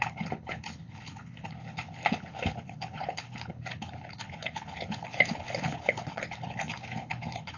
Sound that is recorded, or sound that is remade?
remade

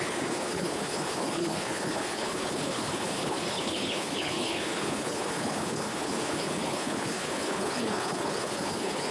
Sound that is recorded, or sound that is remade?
remade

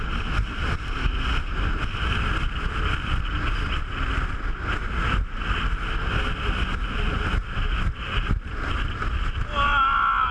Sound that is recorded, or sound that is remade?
recorded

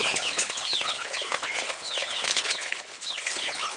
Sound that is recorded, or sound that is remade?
remade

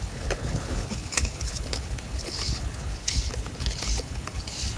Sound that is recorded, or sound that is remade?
remade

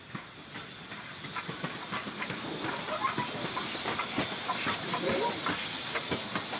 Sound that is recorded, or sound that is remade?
recorded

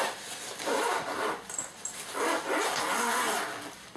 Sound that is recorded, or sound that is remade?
recorded